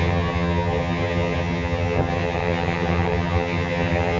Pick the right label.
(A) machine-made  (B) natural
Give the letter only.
A